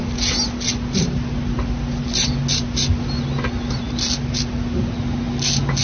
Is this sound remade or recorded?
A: recorded